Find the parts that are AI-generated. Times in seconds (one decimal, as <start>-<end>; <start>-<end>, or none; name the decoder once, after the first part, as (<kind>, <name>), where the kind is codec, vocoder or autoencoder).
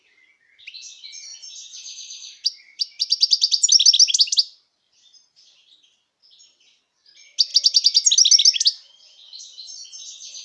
1.3-3.7 (vocoder, BigVGAN v2)